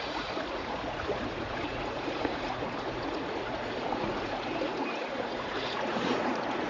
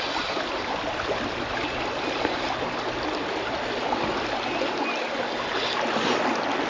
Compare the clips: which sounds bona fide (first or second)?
second